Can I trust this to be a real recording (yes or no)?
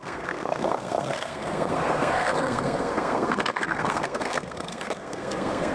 no